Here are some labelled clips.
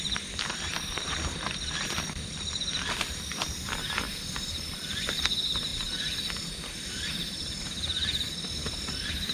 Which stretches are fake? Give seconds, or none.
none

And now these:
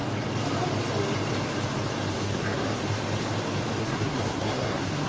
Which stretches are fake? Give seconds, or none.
2.1-2.8; 3.8-5.1

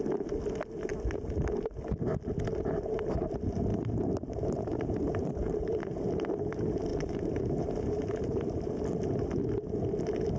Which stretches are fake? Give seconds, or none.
3.7-6.2; 6.9-8.7

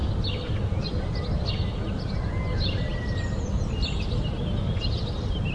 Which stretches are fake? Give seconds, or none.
none

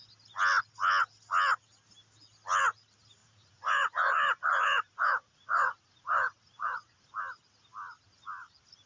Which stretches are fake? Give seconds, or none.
3.2-7.1

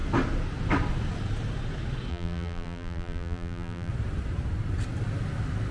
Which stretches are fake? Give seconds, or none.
2.1-3.9

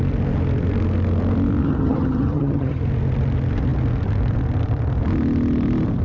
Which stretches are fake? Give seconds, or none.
1.6-2.8